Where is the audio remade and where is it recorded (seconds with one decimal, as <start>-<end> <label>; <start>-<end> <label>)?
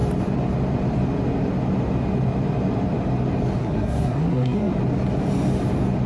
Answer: 0.0-3.6 recorded; 3.6-4.7 remade; 4.7-6.1 recorded